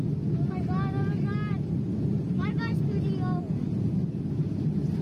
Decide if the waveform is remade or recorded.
recorded